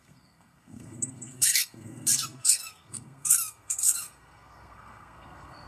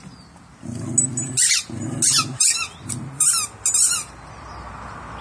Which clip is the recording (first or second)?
second